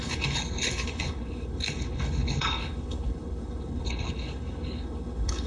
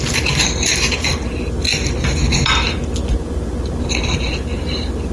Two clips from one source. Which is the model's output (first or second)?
first